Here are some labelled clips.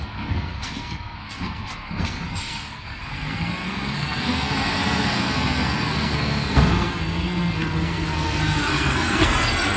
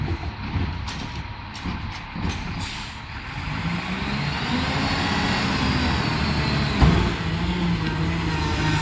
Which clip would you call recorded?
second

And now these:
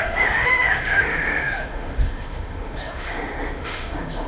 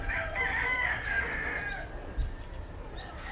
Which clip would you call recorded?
second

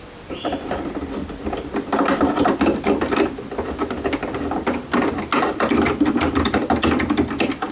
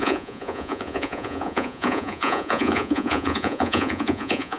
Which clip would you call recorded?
first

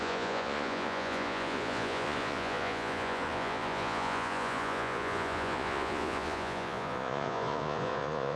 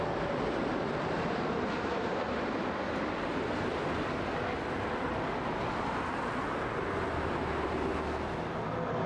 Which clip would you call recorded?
second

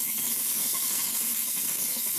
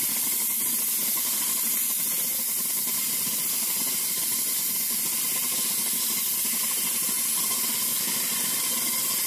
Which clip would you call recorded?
second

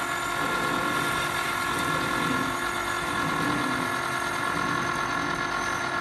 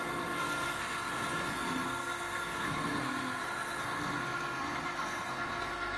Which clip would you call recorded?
first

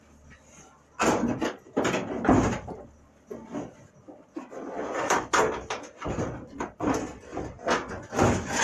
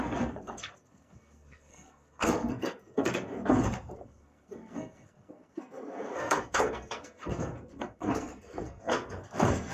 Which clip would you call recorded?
first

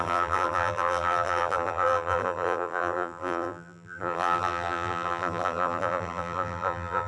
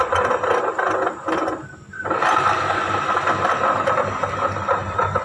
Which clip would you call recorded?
second